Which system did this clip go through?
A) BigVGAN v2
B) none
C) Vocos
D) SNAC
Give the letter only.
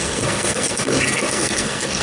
D